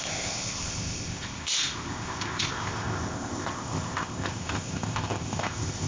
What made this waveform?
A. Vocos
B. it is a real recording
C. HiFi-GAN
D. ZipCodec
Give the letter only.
D